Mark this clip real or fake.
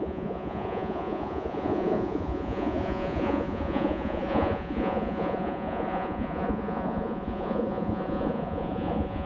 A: fake